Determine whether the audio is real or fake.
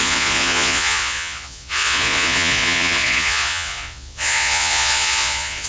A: fake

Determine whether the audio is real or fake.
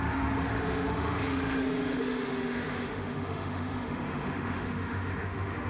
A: fake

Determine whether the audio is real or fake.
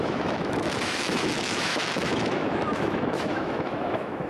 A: fake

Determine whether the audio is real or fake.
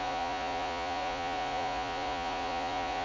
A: fake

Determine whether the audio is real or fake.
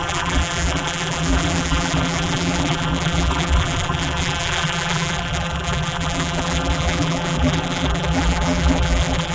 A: fake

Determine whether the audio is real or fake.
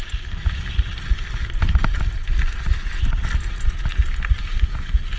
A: real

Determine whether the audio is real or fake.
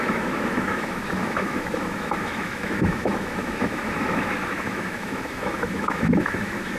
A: fake